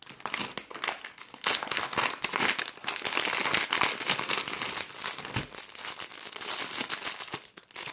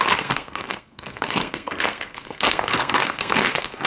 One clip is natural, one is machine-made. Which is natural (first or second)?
first